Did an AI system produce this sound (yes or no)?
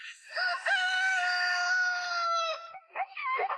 yes